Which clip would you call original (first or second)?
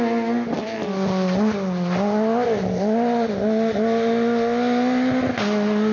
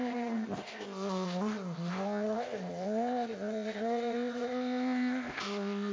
first